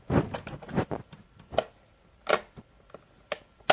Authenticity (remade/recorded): recorded